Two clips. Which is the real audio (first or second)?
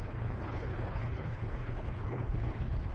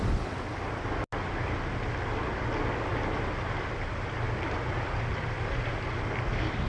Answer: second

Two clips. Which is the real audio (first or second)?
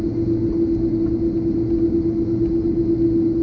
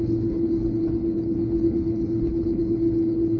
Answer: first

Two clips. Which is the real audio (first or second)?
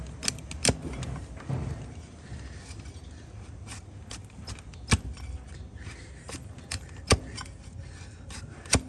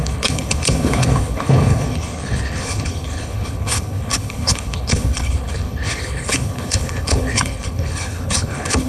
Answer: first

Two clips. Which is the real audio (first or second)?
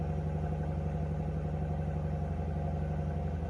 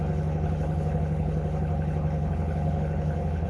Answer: first